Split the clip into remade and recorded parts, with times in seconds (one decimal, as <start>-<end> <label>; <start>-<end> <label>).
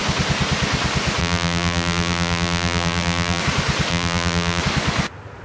0.0-1.2 recorded; 1.2-3.4 remade; 3.4-3.9 recorded; 3.9-4.6 remade; 4.6-5.4 recorded